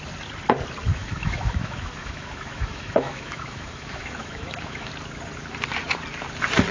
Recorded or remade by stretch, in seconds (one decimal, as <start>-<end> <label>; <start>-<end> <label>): 0.0-0.9 recorded; 0.9-4.9 remade; 4.9-6.7 recorded